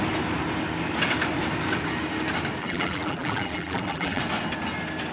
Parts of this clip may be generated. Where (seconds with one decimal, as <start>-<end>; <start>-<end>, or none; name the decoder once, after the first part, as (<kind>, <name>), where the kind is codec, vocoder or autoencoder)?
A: 2.6-4.2 (vocoder, BigVGAN v2)